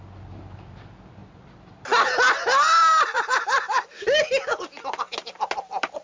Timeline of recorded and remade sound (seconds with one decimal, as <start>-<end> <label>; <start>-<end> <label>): 0.0-6.0 recorded